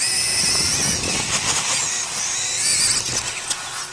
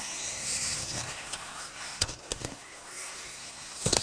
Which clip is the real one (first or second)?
first